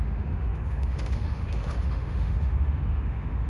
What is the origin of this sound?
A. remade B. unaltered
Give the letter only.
A